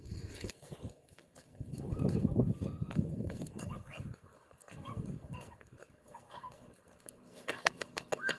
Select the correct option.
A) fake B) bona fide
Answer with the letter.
A